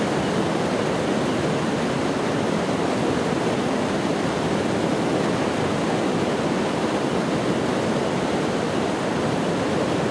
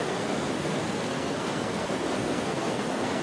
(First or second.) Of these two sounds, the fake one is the second